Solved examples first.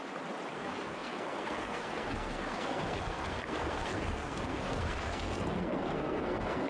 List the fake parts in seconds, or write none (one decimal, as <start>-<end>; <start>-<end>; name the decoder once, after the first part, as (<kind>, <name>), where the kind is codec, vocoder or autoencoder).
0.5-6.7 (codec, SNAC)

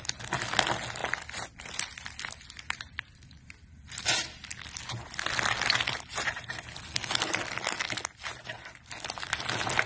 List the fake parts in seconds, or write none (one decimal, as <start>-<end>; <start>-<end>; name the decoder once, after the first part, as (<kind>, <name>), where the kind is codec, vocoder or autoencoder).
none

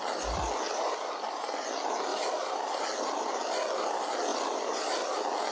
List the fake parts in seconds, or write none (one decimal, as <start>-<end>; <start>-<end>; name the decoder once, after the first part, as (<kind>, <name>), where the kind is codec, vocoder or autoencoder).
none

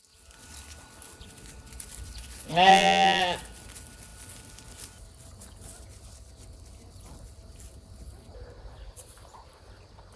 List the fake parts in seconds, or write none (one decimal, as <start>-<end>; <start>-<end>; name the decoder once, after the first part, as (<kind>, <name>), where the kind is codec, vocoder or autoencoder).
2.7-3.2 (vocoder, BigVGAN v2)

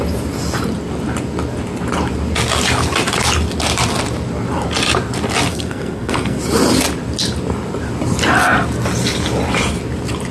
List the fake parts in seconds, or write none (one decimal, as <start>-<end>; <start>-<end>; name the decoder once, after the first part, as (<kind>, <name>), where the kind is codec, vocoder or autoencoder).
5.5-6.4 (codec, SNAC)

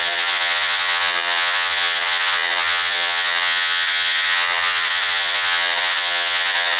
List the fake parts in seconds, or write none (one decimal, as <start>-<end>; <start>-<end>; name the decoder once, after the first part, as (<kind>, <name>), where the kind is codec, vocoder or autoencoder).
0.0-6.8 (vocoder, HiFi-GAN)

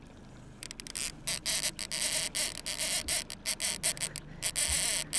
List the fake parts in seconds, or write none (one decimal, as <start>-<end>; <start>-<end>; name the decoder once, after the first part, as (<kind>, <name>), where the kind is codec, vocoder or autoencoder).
none